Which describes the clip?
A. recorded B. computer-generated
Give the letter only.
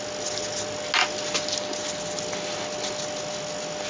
A